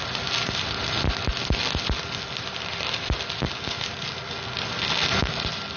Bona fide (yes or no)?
yes